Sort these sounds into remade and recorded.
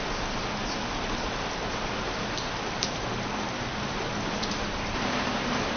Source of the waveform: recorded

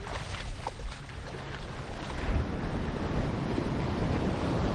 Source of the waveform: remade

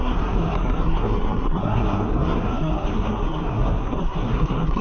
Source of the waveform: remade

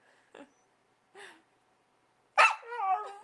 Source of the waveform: recorded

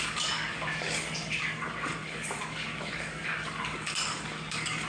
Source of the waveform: remade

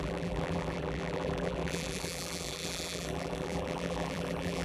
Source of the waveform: remade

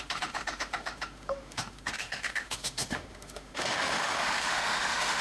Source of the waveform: remade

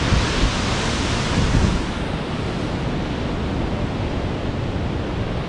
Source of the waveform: recorded